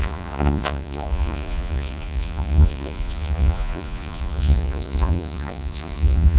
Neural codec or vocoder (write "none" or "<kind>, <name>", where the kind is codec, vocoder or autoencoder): vocoder, Vocos